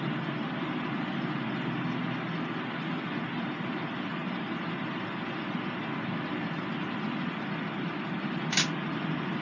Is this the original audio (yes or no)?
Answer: yes